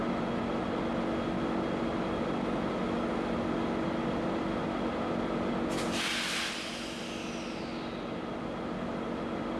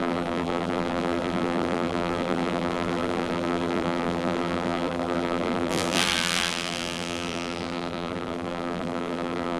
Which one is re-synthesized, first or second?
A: second